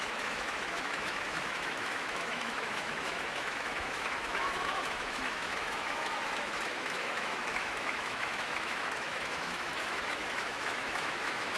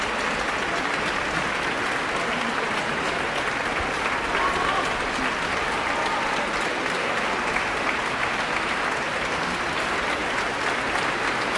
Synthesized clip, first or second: first